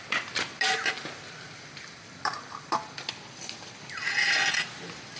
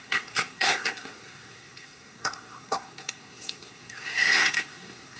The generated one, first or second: second